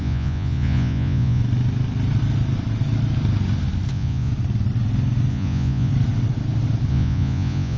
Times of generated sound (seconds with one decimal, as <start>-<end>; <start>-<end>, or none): 0.0-1.4; 3.9-4.3; 5.3-5.9; 6.9-7.8